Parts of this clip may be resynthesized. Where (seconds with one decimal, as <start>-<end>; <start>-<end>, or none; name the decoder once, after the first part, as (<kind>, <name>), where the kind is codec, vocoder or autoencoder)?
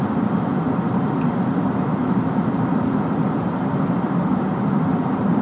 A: 0.0-5.4 (vocoder, BigVGAN v2)